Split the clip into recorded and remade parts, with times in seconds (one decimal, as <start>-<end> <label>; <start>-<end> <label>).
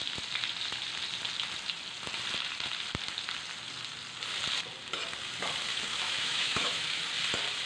0.0-5.7 recorded; 5.7-7.1 remade; 7.1-7.7 recorded